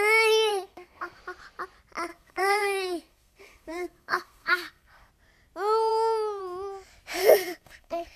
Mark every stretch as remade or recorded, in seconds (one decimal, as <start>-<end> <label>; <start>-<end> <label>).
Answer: 0.0-0.5 recorded; 0.5-1.2 remade; 1.2-2.1 recorded; 2.1-5.1 remade; 5.1-7.2 recorded; 7.2-8.2 remade